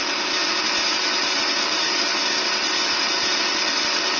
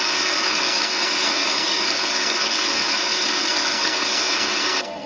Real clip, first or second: first